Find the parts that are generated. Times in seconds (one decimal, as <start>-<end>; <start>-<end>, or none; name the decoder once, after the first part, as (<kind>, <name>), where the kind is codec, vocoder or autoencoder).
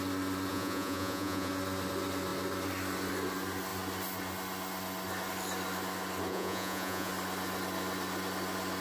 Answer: 0.5-1.5 (vocoder, Vocos); 6.3-7.1